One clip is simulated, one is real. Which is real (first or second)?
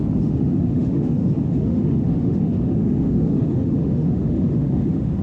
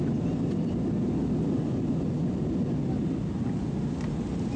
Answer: second